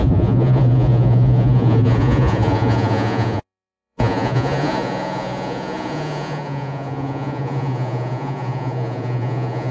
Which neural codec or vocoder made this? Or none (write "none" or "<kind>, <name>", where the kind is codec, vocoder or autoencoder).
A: vocoder, Vocos